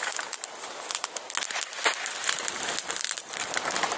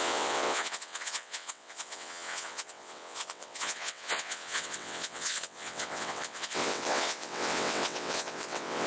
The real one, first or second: first